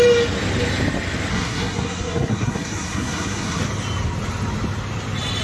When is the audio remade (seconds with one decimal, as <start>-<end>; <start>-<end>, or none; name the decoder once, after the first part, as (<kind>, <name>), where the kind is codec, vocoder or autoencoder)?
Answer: 1.3-3.6 (codec, SNAC)